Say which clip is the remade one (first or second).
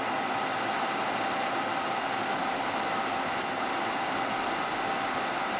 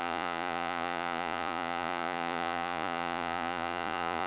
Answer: second